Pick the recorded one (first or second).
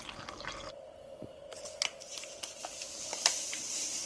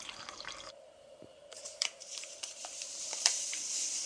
first